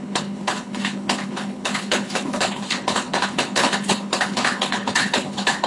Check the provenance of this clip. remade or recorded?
remade